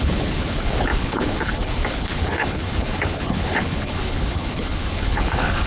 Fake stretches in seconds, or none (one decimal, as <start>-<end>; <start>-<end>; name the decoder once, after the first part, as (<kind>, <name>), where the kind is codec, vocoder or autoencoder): 0.0-5.7 (codec, HILCodec)